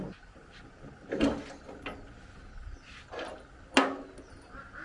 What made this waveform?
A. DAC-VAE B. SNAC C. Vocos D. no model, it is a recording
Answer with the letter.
D